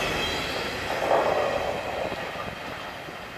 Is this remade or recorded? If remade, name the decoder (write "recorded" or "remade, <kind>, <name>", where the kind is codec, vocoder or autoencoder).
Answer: recorded